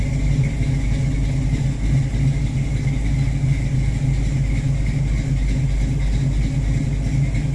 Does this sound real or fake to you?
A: real